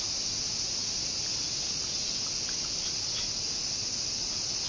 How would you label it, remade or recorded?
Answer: recorded